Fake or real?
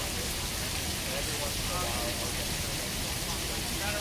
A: real